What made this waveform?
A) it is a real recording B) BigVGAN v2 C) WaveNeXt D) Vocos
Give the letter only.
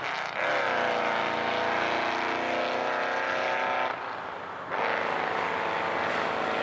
A